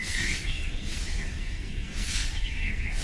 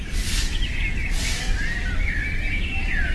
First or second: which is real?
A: second